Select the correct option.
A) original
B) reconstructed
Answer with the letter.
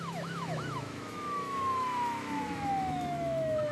B